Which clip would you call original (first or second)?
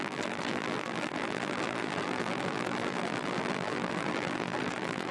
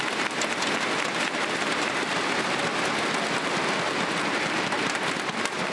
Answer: second